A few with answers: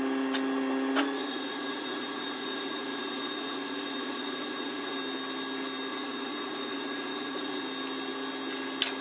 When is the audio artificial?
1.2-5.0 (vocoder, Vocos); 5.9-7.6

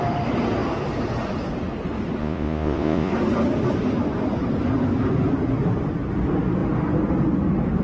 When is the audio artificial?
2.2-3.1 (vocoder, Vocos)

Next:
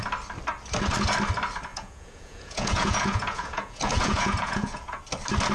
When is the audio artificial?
1.7-5.0 (vocoder, Vocos)

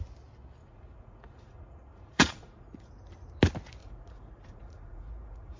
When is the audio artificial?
0.6-2.9 (vocoder, Vocos); 3.8-5.6

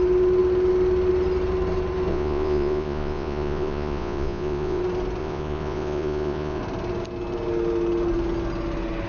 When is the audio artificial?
2.1-4.8 (vocoder, Vocos); 5.2-6.6

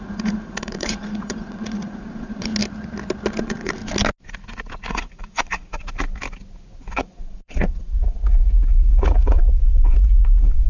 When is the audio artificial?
0.0-2.5 (vocoder, Vocos); 3.4-3.8; 4.9-5.8; 6.9-10.7

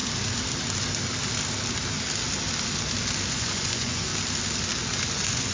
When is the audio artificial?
3.3-4.1 (vocoder, Vocos); 5.1-5.5

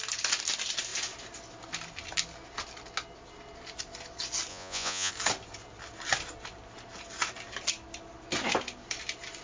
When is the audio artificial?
4.5-5.1 (vocoder, Vocos)